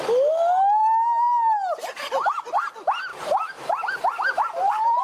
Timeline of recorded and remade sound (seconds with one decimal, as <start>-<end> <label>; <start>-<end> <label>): 0.0-3.1 recorded; 3.1-5.0 remade